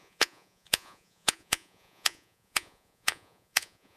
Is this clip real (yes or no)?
no